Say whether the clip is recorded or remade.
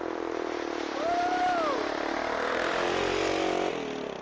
recorded